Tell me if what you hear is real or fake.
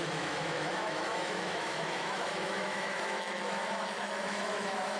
fake